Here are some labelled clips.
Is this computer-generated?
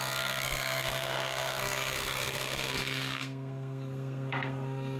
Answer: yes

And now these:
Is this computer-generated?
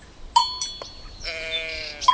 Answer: no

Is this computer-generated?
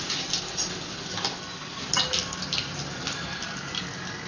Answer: no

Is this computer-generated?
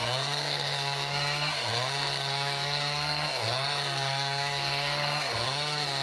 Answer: yes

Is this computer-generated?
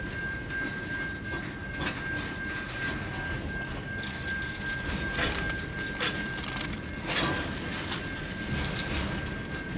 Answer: no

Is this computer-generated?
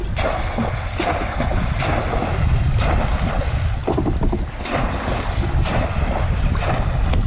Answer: no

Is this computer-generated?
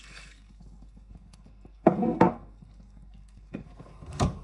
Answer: yes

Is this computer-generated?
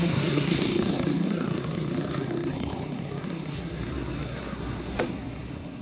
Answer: yes